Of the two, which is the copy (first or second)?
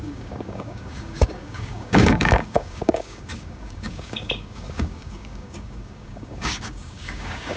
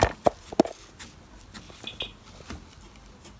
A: first